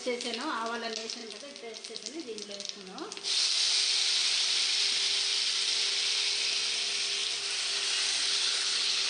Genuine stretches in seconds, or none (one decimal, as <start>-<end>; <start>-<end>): 0.0-8.2